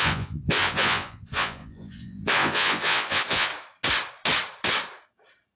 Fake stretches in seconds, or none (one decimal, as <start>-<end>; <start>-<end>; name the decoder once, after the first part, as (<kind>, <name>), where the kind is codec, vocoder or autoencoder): 0.0-3.5 (vocoder, Vocos)